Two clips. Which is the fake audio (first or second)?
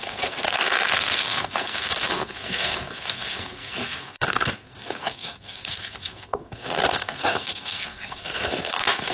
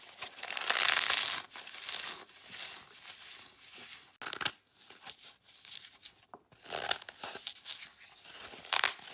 first